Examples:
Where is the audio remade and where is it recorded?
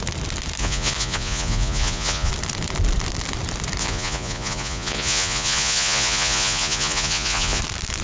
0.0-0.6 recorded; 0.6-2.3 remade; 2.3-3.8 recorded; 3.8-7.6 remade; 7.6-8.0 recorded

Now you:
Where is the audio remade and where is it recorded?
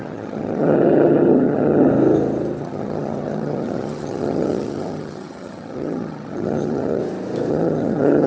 0.0-1.9 remade; 1.9-2.6 recorded; 2.6-7.0 remade; 7.0-7.5 recorded; 7.5-8.3 remade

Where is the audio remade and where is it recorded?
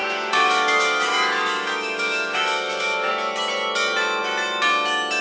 0.0-3.1 remade; 3.1-5.2 recorded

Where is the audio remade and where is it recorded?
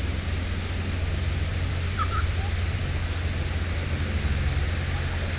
0.0-1.5 recorded; 1.5-2.8 remade; 2.8-5.4 recorded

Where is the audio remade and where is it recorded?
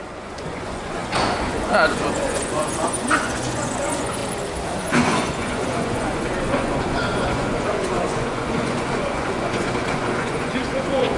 0.0-4.2 remade; 4.2-4.8 recorded; 4.8-11.2 remade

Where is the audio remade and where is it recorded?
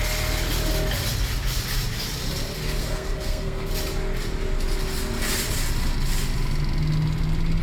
0.0-2.8 recorded; 2.8-3.7 remade; 3.7-7.6 recorded